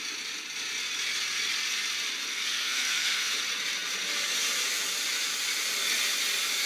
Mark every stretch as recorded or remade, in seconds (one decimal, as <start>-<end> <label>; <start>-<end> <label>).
0.0-2.3 recorded; 2.3-3.4 remade; 3.4-6.7 recorded